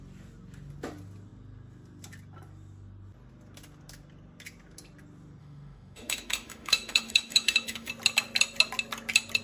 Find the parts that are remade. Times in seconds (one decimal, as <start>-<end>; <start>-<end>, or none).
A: 5.4-7.9